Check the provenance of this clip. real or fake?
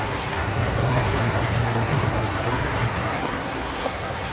fake